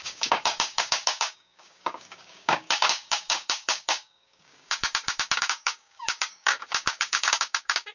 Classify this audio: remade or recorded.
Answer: remade